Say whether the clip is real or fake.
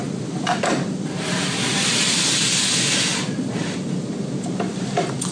real